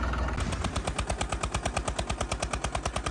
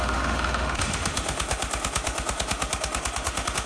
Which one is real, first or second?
first